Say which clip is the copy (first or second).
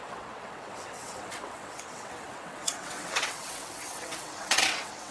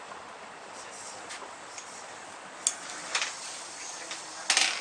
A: first